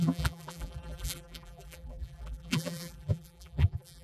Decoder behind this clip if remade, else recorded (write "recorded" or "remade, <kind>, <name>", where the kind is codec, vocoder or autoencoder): remade, vocoder, BigVGAN v2